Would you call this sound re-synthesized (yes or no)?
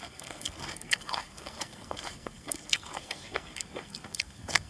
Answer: yes